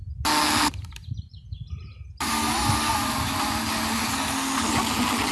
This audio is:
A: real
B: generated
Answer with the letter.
A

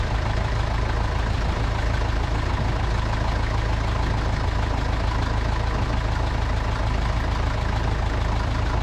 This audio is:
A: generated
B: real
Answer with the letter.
B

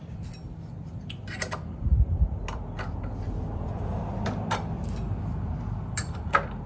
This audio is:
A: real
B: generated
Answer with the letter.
A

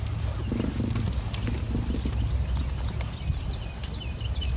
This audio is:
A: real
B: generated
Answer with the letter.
A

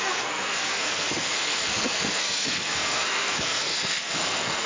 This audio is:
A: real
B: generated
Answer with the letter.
B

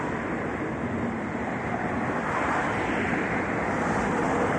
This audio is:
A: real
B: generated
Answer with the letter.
A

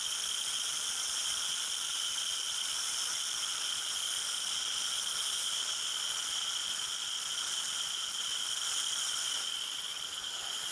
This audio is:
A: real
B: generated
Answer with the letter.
A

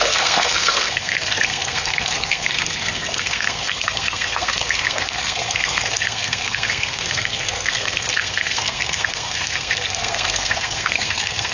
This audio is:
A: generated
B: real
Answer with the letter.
A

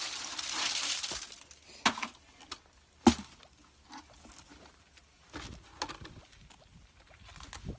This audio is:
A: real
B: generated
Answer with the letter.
A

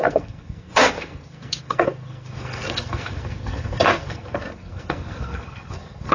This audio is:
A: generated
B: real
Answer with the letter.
A